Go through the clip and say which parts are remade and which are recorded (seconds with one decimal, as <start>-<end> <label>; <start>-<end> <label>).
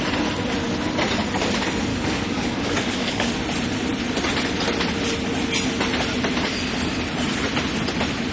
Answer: 0.0-1.9 recorded; 1.9-3.3 remade; 3.3-8.3 recorded